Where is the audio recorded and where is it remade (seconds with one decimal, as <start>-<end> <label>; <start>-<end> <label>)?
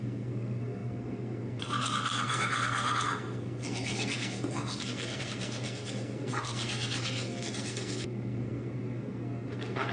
0.0-9.9 remade